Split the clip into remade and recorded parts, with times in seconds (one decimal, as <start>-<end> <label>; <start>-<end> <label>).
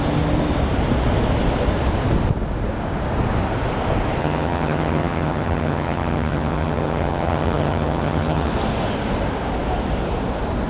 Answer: 0.0-4.2 recorded; 4.2-8.5 remade; 8.5-10.7 recorded